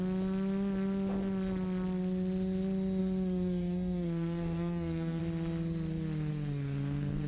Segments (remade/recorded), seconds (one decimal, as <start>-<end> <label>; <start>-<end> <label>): 0.0-3.0 recorded; 3.0-5.2 remade; 5.2-6.3 recorded; 6.3-7.3 remade